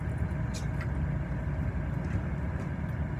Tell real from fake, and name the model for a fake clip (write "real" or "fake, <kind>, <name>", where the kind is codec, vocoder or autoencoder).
real